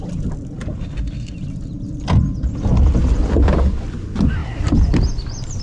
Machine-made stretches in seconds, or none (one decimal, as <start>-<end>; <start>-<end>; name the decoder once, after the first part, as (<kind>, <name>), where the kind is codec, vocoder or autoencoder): none